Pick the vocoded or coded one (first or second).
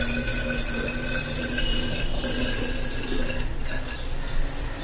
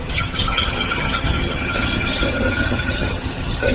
second